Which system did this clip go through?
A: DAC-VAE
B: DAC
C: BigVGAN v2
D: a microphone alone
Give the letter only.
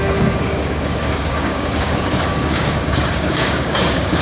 B